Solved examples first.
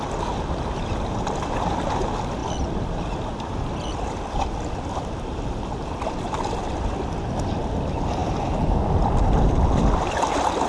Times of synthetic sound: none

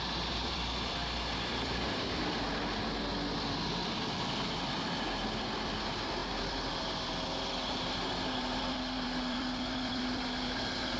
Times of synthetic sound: 0.0-1.0 (vocoder, BigVGAN v2); 1.5-3.1; 5.8-11.0

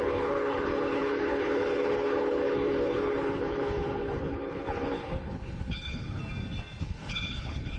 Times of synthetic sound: 0.0-6.2 (codec, HILCodec); 6.8-7.8